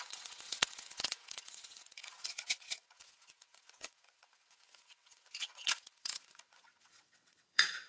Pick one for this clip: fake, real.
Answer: fake